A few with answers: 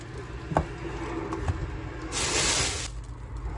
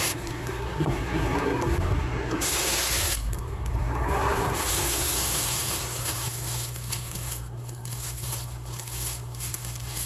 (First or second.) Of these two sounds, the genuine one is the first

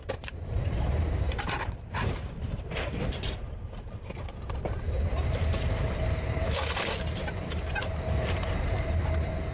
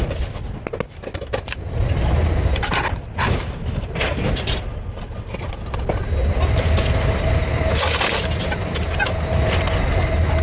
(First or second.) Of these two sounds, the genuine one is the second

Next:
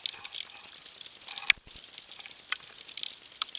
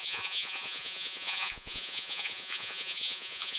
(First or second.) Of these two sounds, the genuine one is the first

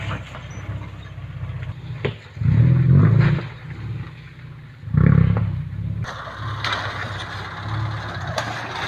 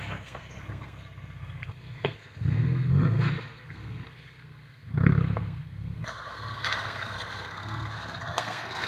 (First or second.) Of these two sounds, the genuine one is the first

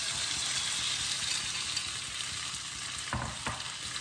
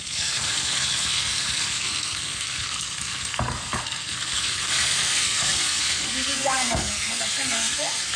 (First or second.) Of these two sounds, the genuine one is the first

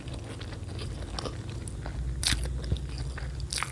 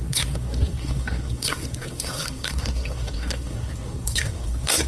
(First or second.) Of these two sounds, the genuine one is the first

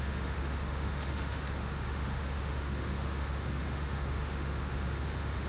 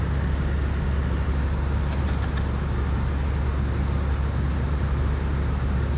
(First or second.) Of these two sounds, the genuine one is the second